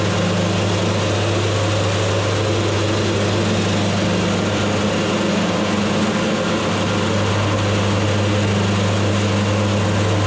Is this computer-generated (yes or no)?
no